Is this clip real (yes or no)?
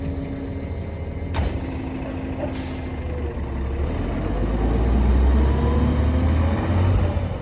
yes